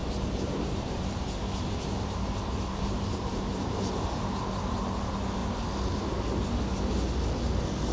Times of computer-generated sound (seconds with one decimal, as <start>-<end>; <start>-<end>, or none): 0.0-4.4; 5.4-6.1